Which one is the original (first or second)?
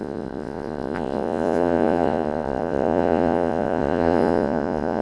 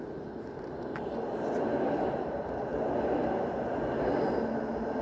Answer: second